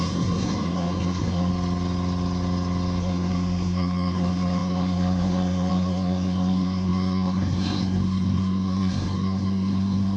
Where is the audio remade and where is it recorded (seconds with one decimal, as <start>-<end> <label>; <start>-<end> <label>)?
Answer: 0.0-1.5 remade; 1.5-3.0 recorded; 3.0-10.2 remade